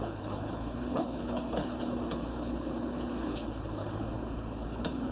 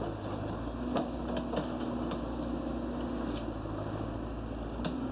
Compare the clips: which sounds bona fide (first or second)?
second